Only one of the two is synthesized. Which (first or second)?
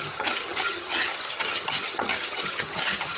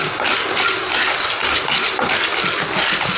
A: first